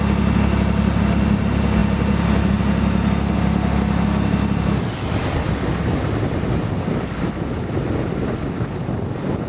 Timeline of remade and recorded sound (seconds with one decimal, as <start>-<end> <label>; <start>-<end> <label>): 0.0-9.5 recorded